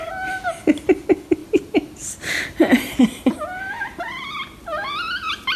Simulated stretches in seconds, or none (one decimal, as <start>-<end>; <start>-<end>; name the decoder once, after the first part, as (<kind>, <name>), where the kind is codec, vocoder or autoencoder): 1.4-4.3 (vocoder, BigVGAN v2)